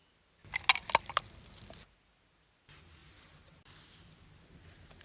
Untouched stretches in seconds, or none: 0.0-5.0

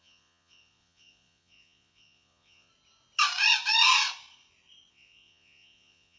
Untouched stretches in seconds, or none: 2.7-4.9